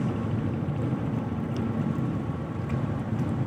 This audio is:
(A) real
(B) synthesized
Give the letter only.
B